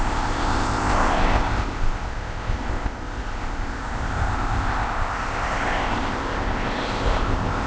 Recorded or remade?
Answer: remade